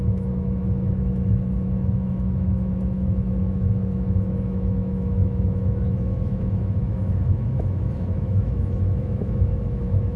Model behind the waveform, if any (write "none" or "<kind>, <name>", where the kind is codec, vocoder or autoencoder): autoencoder, DAC-VAE